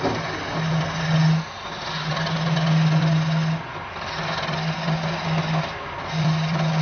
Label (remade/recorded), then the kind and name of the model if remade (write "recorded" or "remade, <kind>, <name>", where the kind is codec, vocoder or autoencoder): recorded